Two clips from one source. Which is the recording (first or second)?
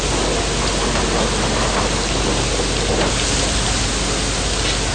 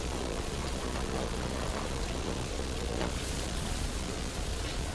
first